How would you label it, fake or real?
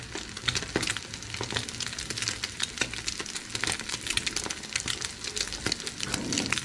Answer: real